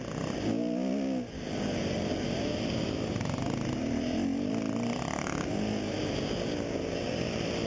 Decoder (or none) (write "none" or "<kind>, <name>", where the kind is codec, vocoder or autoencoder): none